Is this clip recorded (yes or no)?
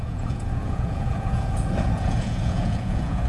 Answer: no